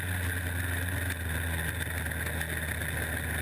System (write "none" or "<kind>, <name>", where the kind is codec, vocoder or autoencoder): none